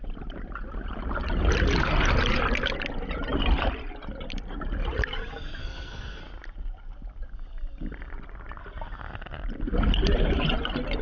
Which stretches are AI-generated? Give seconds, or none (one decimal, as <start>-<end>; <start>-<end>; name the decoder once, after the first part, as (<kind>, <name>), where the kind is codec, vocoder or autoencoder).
5.6-6.2 (codec, SNAC)